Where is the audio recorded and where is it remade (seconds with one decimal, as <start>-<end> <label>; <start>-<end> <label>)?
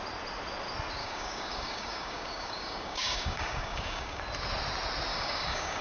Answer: 0.0-1.0 recorded; 1.0-4.2 remade; 4.2-5.1 recorded; 5.1-5.8 remade